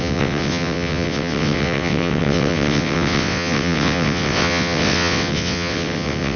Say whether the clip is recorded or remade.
remade